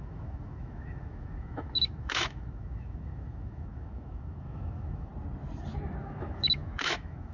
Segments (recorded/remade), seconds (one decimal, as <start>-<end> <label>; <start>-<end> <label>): 0.0-5.1 remade; 5.1-6.0 recorded; 6.0-7.3 remade